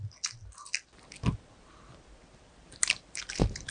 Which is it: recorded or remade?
recorded